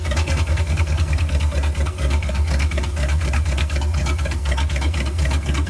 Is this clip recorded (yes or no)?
no